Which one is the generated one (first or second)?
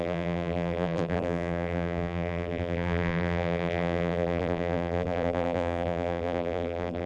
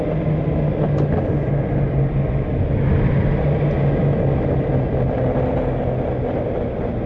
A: first